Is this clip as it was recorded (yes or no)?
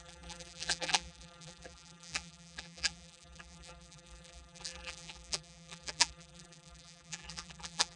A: no